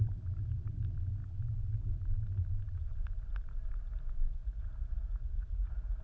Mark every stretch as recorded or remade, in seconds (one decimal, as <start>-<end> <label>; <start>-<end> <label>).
0.0-4.4 recorded; 4.4-6.0 remade